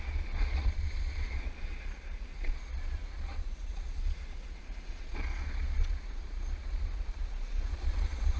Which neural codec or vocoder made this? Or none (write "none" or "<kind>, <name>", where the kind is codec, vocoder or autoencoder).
vocoder, Vocos